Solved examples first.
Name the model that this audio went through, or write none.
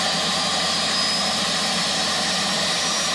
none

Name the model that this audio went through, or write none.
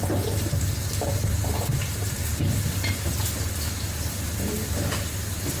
none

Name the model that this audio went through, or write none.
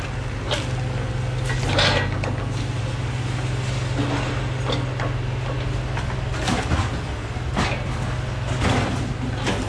none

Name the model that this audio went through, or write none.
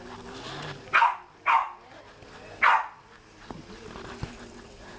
none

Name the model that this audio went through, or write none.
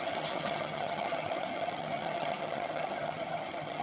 vocoder, HiFi-GAN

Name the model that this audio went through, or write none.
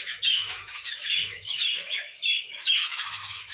autoencoder, DAC-VAE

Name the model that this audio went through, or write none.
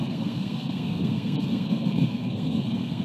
codec, SNAC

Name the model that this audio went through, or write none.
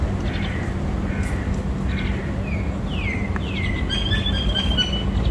none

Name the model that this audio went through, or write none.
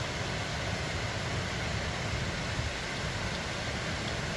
none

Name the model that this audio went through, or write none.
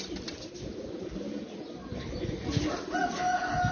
none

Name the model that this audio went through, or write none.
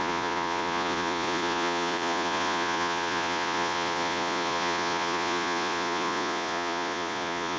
vocoder, Vocos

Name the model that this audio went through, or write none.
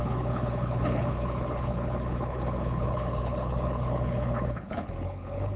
codec, HILCodec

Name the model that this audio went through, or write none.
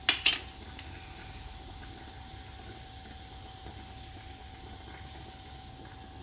none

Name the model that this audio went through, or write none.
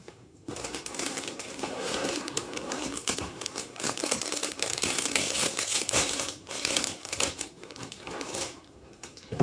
codec, SNAC